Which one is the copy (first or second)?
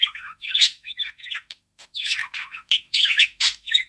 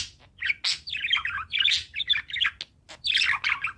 first